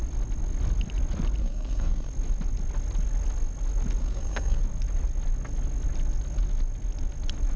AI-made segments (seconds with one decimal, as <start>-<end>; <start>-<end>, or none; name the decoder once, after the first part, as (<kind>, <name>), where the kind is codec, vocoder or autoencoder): 1.4-2.1 (codec, SNAC); 4.0-4.6